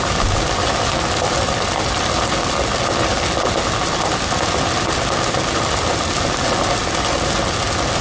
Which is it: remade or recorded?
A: recorded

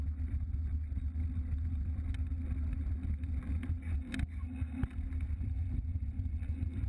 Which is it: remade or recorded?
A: recorded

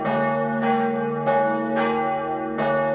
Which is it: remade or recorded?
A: recorded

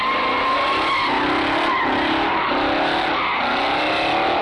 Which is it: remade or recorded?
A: recorded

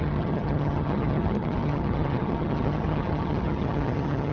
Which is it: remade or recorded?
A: remade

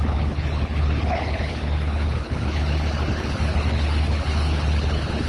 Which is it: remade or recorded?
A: remade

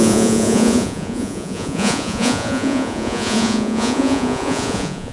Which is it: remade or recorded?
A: remade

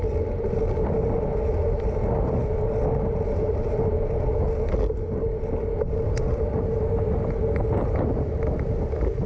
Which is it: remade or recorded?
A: recorded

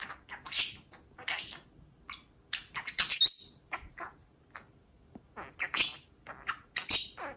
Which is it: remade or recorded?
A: recorded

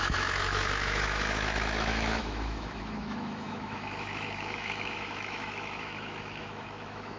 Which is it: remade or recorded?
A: remade